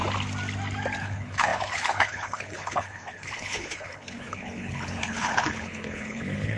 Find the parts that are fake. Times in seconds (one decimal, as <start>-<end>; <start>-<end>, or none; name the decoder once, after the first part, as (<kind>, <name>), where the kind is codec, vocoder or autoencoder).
1.0-6.6 (codec, HILCodec)